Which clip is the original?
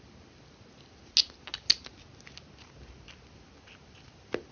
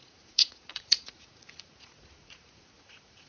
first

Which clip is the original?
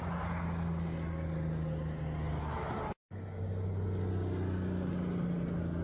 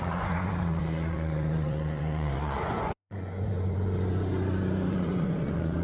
first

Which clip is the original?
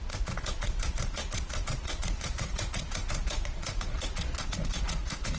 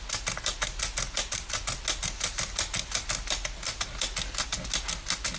second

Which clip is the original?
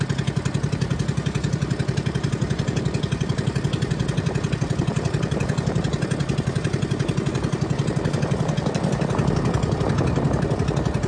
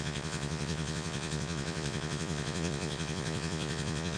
first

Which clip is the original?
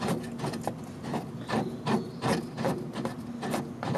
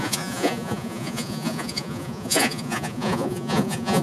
first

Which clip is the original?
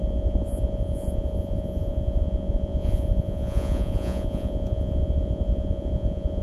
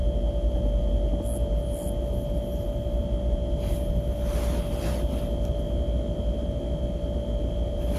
second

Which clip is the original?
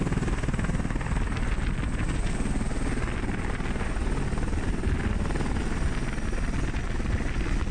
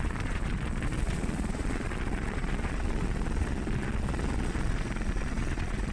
first